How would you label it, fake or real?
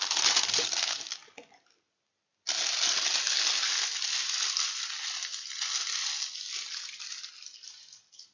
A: real